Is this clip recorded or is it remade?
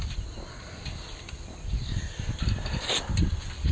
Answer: remade